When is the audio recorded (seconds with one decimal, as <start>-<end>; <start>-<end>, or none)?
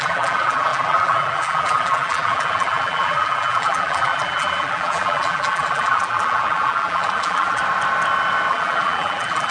7.6-8.5